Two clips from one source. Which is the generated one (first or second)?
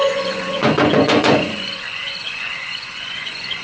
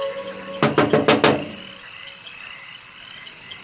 first